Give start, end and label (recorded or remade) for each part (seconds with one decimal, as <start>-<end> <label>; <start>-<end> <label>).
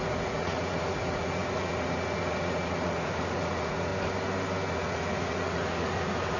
0.0-3.9 remade; 3.9-4.7 recorded; 4.7-6.4 remade